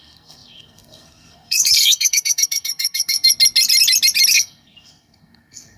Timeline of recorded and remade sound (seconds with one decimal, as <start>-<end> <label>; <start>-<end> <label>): 0.0-3.3 remade; 3.3-4.3 recorded; 4.3-5.8 remade